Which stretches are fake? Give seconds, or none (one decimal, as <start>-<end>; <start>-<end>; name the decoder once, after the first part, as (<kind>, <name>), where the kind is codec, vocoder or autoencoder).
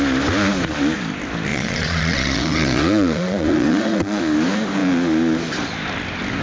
1.5-4.2 (vocoder, Vocos)